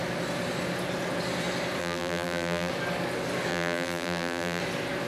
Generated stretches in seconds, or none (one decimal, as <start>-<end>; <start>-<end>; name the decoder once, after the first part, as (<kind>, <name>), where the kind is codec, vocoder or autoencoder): 1.8-2.7 (vocoder, BigVGAN v2); 3.5-4.6